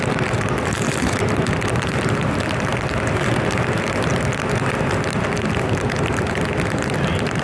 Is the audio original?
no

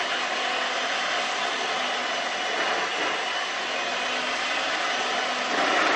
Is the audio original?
yes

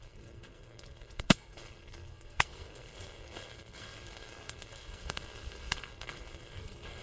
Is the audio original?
no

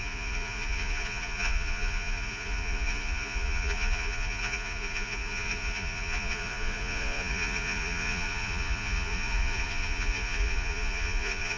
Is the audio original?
no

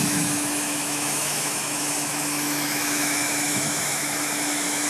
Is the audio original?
no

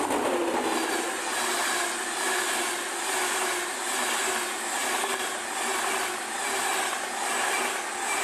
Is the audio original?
yes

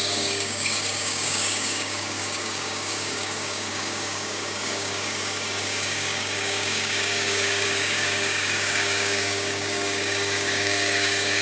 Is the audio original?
no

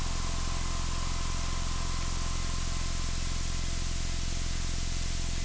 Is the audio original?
yes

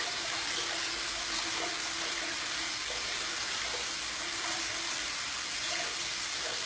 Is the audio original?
no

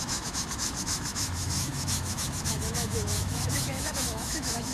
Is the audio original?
no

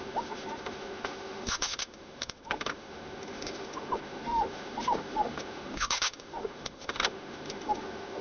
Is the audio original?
no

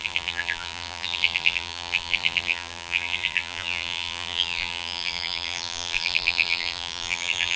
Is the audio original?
no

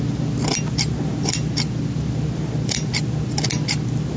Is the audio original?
yes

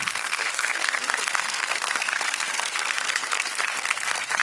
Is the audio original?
no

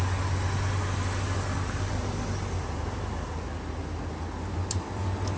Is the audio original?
yes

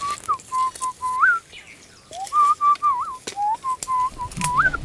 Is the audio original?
yes